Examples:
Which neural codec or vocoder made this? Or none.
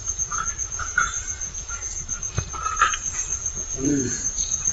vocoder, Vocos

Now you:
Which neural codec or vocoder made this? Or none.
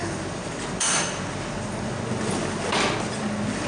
none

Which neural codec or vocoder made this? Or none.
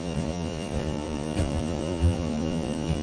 vocoder, Vocos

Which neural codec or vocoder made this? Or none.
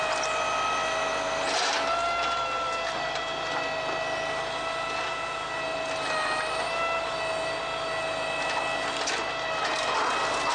none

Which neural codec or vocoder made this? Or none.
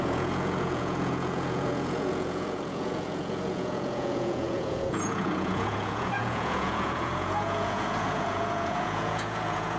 vocoder, Vocos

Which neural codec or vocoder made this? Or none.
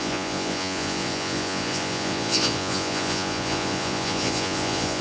vocoder, Vocos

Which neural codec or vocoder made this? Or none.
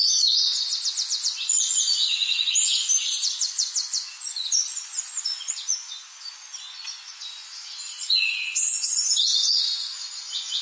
vocoder, Vocos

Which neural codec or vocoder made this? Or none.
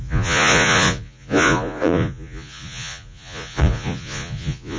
vocoder, Vocos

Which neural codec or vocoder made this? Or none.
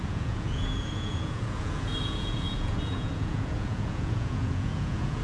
vocoder, Vocos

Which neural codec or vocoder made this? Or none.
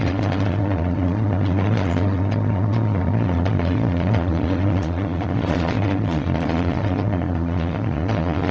vocoder, Vocos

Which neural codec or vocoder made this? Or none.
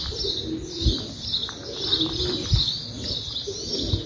none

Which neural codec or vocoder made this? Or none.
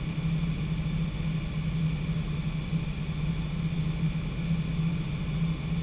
none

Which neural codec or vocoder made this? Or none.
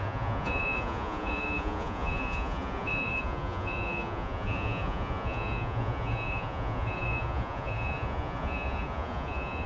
vocoder, Vocos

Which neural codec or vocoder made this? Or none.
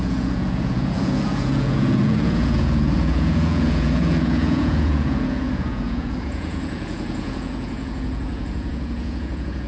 vocoder, Vocos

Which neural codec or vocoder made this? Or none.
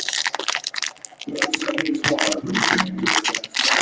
none